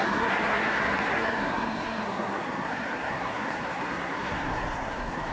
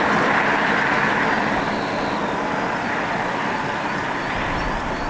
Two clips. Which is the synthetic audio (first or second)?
first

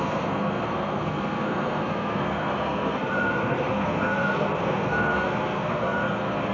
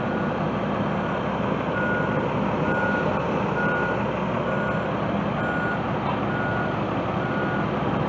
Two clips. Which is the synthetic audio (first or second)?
first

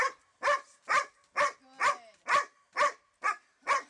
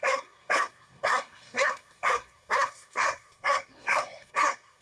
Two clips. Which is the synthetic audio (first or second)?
second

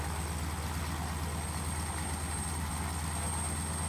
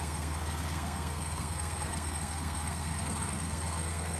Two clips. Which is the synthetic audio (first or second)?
second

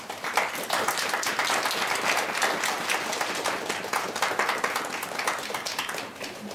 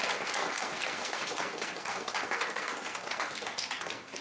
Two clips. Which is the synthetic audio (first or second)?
second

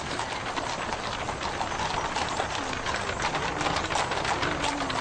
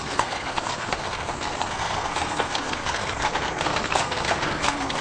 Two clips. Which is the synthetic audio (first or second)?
second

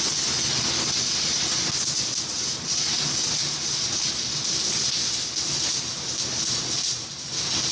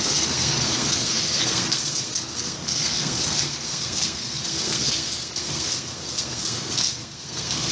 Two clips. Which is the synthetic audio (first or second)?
second